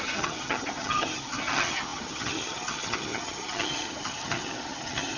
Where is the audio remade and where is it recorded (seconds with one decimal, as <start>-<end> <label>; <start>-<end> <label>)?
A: 0.0-5.2 remade